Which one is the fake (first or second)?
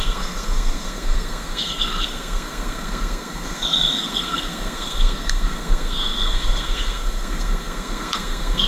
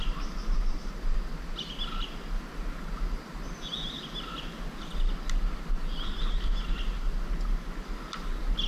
first